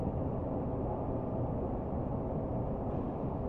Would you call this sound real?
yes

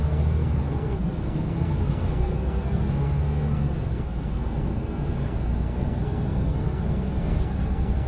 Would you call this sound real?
no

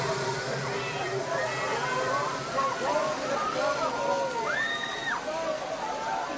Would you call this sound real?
yes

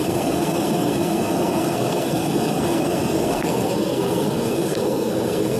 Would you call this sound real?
no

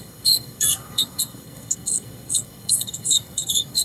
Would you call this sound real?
no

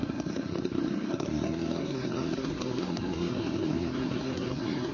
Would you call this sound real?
no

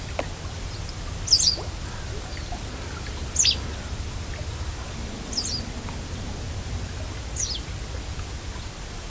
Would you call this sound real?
yes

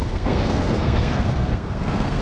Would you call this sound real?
no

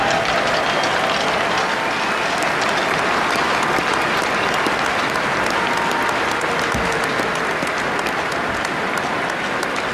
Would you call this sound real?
yes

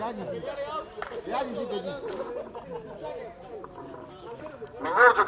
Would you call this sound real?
yes